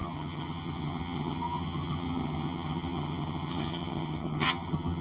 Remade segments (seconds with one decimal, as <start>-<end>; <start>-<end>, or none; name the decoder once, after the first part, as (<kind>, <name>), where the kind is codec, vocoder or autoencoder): 0.0-5.0 (vocoder, HiFi-GAN)